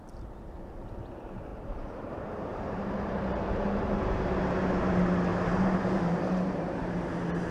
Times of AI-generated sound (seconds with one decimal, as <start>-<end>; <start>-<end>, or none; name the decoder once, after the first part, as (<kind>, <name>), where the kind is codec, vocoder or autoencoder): 1.5-2.1 (vocoder, BigVGAN v2); 2.5-4.6; 5.3-7.5